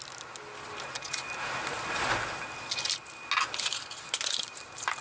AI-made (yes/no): no